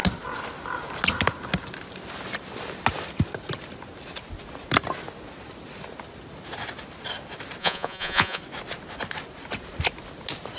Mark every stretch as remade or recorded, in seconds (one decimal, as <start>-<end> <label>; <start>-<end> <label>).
0.0-7.6 recorded; 7.6-8.4 remade; 8.4-10.6 recorded